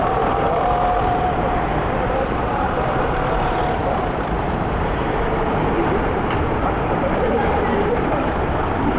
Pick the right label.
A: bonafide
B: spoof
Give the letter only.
B